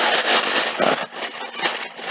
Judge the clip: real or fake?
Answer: real